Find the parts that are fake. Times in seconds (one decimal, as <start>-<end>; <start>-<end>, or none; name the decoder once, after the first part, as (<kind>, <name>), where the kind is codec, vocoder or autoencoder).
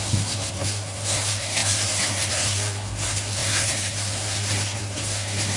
0.0-5.6 (codec, SNAC)